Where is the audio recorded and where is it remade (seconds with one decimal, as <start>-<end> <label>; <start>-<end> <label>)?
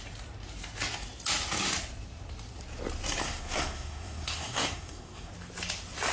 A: 0.0-3.2 recorded; 3.2-5.3 remade; 5.3-6.1 recorded